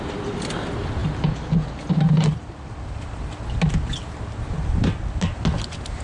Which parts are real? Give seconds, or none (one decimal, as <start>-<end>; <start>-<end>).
0.0-6.0